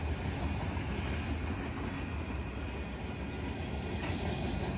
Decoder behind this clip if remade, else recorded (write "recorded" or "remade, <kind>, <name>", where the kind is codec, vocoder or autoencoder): recorded